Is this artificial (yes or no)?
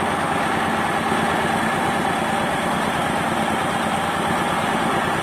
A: no